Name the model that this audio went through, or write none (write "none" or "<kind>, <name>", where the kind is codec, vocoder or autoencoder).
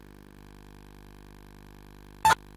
none